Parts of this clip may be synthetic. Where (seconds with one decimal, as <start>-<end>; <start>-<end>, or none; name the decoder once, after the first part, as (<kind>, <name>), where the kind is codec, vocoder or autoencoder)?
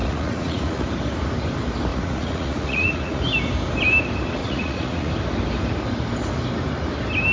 0.0-0.9 (vocoder, Vocos); 1.9-3.2; 4.4-5.1